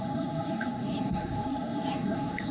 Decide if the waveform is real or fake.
fake